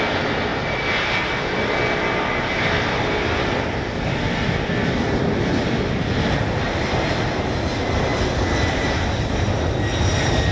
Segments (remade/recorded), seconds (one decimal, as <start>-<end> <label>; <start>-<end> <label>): 0.0-10.5 recorded